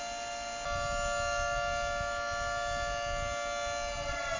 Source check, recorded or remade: recorded